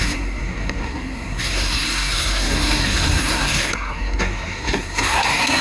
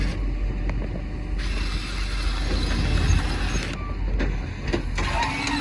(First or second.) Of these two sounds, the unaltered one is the second